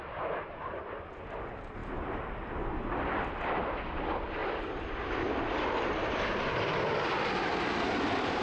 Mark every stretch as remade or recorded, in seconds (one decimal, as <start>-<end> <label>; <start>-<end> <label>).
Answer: 0.0-8.4 recorded

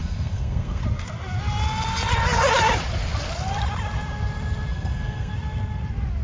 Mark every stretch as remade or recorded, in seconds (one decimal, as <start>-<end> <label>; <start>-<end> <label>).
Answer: 0.0-0.8 remade; 0.8-4.7 recorded; 4.7-5.3 remade; 5.3-6.2 recorded